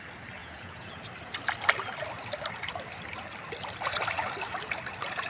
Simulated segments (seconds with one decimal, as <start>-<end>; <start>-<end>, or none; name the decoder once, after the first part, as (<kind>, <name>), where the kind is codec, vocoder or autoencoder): 0.4-0.9 (vocoder, Vocos)